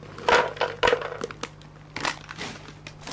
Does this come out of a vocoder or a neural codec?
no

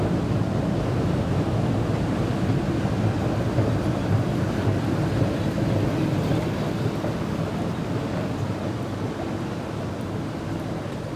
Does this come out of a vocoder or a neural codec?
no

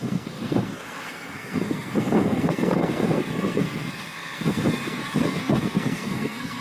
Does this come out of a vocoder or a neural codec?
yes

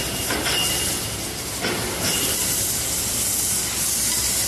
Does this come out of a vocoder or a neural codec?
no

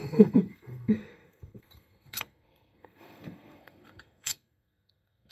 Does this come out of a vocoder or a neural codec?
yes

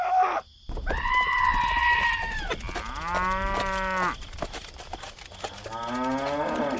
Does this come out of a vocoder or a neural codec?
no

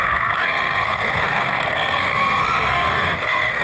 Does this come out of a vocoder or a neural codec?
yes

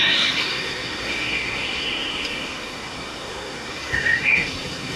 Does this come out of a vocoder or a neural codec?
yes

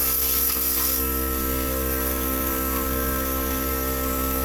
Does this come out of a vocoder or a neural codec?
yes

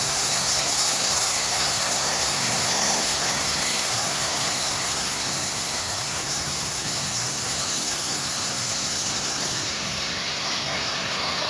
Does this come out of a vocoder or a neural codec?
yes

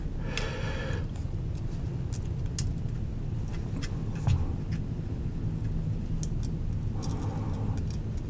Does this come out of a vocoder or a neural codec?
no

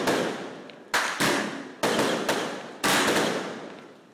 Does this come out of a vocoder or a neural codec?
no